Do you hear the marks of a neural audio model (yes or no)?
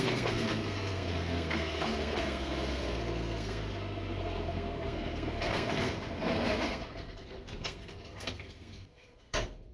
yes